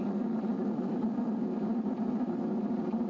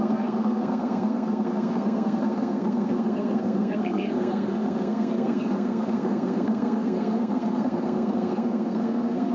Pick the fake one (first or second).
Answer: second